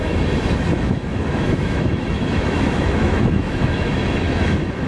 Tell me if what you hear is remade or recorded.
remade